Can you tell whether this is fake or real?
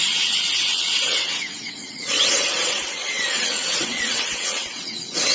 fake